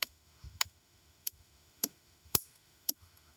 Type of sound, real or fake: fake